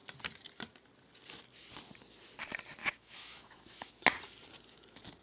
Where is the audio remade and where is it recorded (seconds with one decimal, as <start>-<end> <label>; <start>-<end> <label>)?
0.0-2.8 recorded; 2.8-3.9 remade; 3.9-5.2 recorded